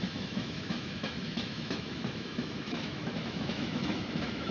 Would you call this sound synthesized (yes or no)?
yes